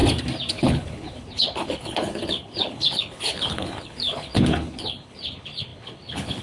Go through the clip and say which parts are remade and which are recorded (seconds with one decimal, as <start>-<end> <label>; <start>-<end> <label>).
0.0-0.5 recorded; 0.5-6.4 remade